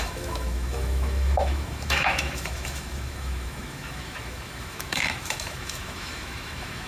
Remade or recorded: remade